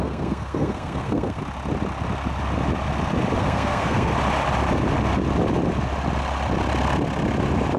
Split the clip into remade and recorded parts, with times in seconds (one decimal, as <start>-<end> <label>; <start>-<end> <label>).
0.0-1.4 remade; 1.4-3.4 recorded; 3.4-4.1 remade; 4.1-7.8 recorded